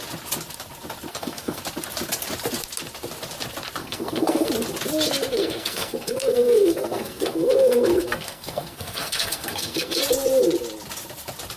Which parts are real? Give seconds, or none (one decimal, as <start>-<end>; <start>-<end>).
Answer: 0.0-1.1; 1.6-3.8; 4.5-5.3; 10.0-11.6